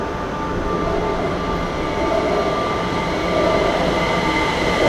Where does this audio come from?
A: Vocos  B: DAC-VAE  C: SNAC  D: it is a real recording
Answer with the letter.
D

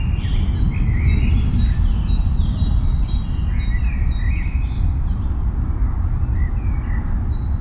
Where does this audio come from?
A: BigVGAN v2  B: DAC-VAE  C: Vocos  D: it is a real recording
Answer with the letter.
D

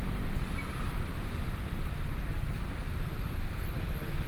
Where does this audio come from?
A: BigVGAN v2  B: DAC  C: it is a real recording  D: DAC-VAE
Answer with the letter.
C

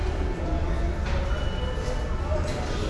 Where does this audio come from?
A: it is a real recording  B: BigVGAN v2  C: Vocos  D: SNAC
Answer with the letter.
A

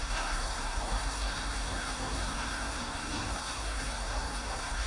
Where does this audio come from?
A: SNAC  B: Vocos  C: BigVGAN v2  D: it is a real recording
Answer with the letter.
A